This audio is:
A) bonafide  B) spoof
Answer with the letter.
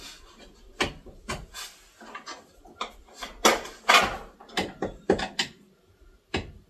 A